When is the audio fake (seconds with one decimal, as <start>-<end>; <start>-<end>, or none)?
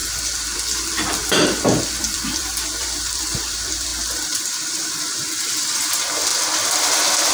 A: 0.0-6.3